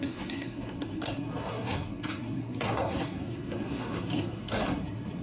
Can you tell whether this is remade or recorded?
remade